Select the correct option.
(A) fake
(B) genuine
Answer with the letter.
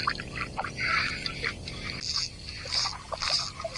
B